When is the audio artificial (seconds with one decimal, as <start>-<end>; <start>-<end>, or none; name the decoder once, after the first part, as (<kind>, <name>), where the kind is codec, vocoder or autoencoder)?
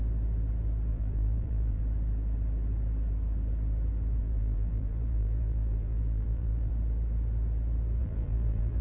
0.9-1.8 (vocoder, BigVGAN v2); 4.2-6.7; 8.0-8.8